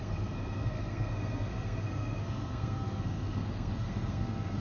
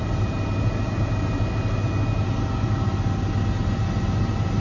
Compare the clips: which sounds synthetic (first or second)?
first